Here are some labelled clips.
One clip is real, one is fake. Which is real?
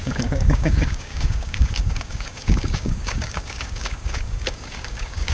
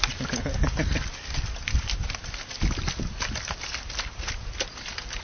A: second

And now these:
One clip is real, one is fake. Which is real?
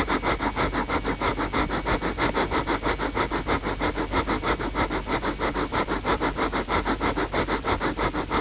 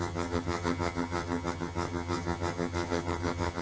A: first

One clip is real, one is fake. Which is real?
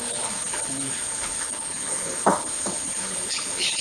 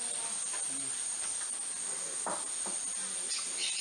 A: second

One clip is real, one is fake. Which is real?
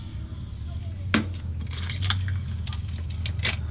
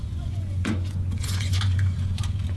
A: first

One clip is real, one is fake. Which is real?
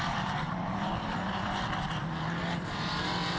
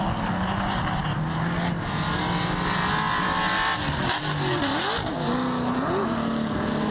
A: second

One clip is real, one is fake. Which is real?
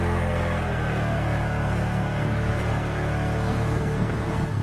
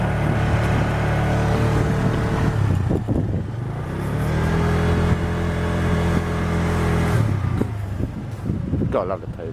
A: second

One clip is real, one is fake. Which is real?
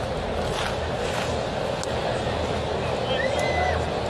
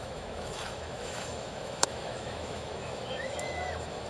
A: first